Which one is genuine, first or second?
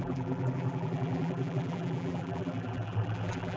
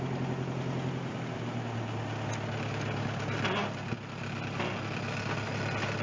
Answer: second